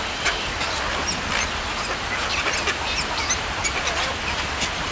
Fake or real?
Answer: real